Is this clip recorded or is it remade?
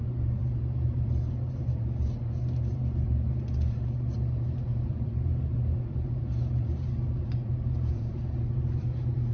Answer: remade